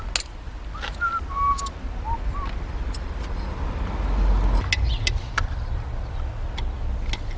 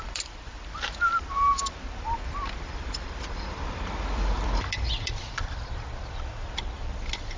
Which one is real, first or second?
first